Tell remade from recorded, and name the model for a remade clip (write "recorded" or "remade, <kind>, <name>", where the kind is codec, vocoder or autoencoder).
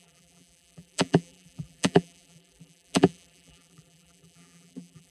remade, vocoder, BigVGAN v2